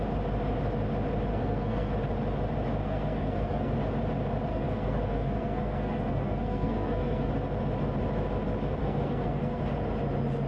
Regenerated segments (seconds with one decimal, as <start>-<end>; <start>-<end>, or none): 1.3-1.9; 2.8-3.7; 4.5-7.3; 8.8-9.6